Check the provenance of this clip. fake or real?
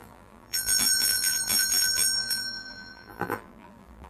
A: fake